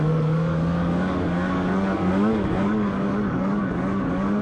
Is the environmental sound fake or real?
fake